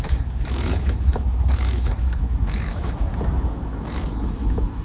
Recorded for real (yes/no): no